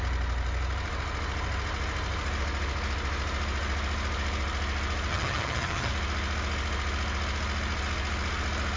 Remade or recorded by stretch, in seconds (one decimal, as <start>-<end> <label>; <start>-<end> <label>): 0.0-5.1 recorded; 5.1-5.9 remade; 5.9-8.8 recorded